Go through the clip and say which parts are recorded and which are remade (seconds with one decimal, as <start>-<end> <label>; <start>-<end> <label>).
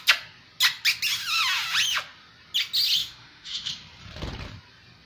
0.0-3.0 recorded; 3.0-3.7 remade; 3.7-5.1 recorded